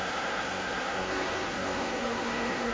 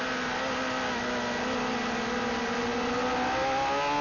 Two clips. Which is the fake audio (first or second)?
first